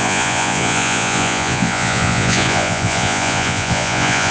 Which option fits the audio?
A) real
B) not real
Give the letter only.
B